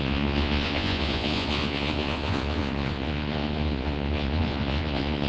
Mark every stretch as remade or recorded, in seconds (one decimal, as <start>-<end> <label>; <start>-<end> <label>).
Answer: 0.0-5.3 remade